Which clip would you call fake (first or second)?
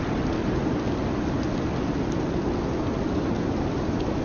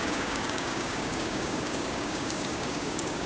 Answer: second